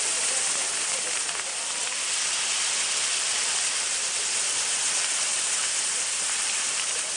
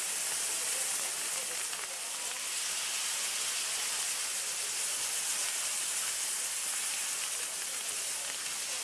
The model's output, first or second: first